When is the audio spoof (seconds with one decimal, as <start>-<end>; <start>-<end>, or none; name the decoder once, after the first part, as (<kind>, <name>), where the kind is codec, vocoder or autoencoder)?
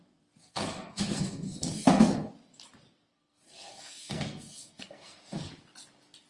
0.4-2.3 (codec, SNAC); 3.1-5.5